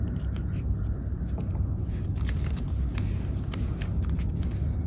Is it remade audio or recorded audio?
recorded